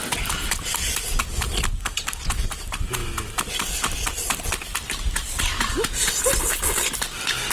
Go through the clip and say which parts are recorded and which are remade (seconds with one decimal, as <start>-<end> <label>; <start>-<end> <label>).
0.0-7.5 recorded